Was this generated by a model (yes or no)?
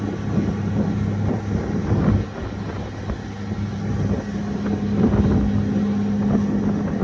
no